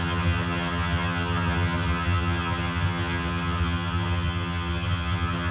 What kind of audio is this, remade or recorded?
remade